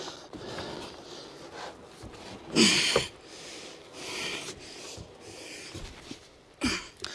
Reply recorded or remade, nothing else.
recorded